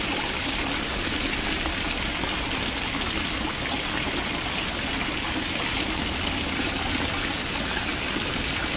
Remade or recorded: recorded